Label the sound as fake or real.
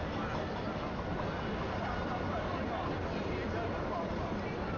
real